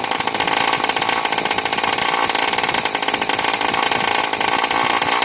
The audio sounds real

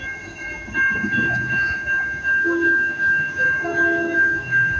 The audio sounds fake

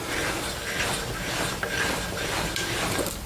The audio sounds real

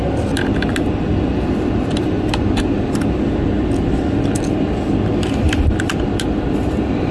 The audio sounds real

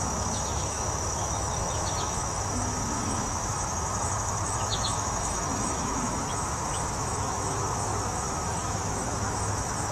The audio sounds fake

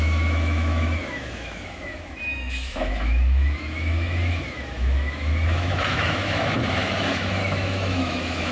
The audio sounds fake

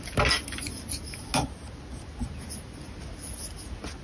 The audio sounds real